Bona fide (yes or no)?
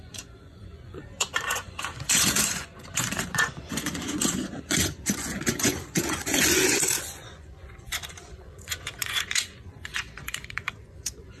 no